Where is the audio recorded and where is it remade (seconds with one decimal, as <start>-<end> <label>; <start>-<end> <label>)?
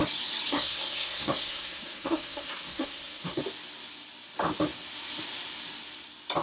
0.0-0.5 recorded; 0.5-3.4 remade; 3.4-6.4 recorded